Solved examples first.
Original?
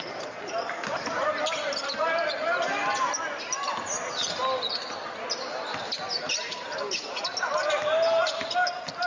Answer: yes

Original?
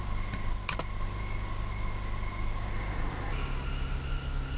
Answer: yes